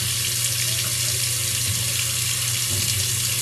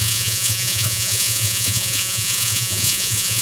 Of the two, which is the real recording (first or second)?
first